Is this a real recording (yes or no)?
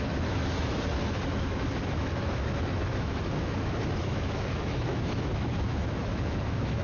no